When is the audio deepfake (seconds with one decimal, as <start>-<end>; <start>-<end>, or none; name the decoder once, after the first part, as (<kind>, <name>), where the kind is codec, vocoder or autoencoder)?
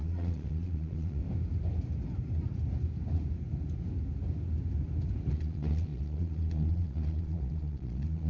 0.0-1.2 (vocoder, Vocos); 5.3-8.3